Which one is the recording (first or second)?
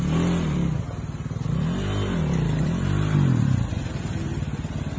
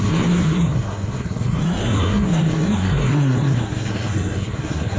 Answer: first